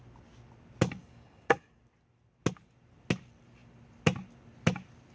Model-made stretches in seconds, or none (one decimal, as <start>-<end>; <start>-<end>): 1.0-1.8